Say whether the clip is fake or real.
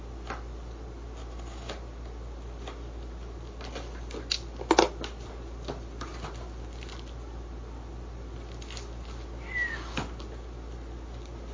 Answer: real